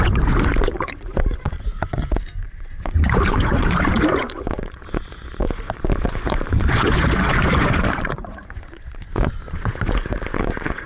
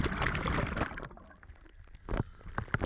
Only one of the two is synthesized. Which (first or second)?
first